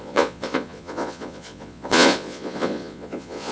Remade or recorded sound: remade